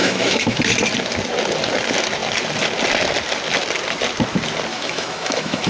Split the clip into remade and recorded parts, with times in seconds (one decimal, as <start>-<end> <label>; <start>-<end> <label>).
0.0-0.6 remade; 0.6-4.7 recorded; 4.7-5.7 remade